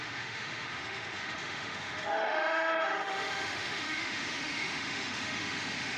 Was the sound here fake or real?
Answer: fake